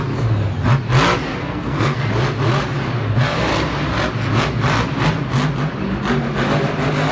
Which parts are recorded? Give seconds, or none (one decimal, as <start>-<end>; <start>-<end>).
0.0-1.4; 2.0-7.1